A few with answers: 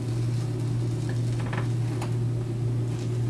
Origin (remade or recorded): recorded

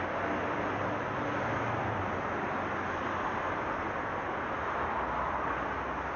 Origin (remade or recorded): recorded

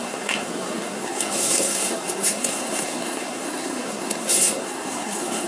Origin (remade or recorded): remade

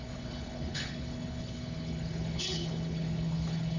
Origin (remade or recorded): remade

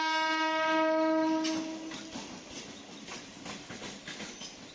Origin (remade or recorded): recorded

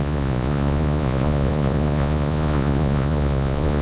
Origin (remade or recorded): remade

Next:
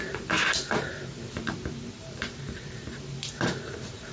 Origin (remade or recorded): remade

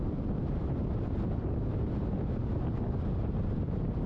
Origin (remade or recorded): recorded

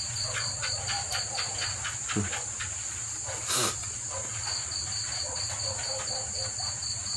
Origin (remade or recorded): recorded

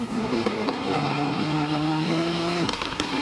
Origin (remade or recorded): remade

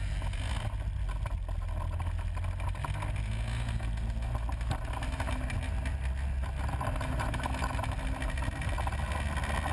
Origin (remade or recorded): recorded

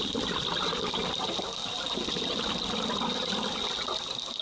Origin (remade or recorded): recorded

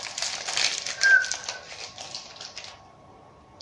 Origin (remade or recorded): recorded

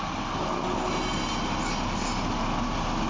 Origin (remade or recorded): recorded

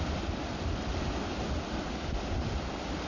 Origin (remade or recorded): recorded